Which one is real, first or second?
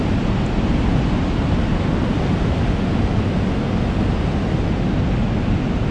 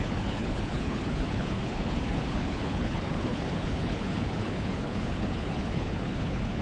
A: first